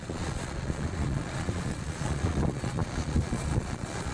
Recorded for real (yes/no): no